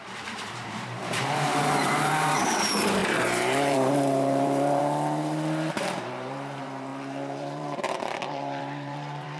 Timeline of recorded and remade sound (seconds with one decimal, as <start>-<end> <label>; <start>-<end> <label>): 0.0-4.8 remade; 4.8-5.7 recorded; 5.7-9.4 remade